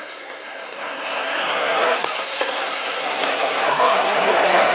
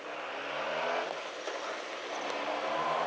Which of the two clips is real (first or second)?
second